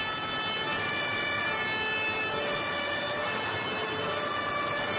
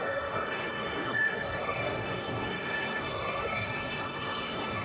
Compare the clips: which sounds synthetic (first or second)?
second